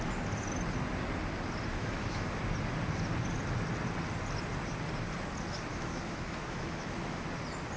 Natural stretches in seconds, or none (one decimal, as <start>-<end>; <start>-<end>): 0.0-1.7; 2.4-5.7; 7.2-7.8